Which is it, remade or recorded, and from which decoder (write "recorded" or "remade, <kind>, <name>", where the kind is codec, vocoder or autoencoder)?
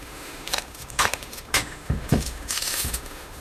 remade, autoencoder, DAC-VAE